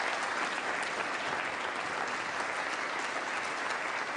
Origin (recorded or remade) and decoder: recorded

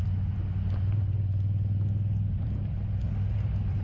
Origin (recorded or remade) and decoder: recorded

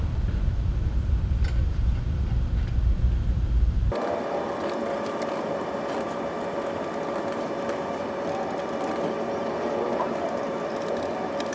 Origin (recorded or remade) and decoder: remade, vocoder, BigVGAN v2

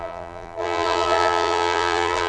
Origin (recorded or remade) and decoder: remade, vocoder, BigVGAN v2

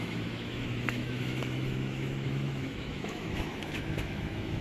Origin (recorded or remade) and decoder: remade, autoencoder, DAC-VAE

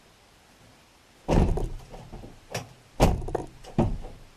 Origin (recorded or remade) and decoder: recorded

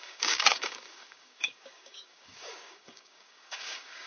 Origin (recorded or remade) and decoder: remade, codec, DAC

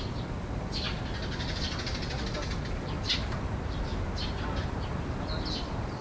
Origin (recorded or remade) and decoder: recorded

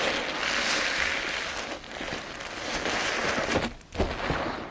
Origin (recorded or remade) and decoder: recorded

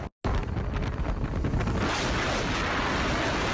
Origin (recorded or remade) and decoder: recorded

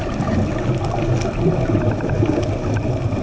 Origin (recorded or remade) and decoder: recorded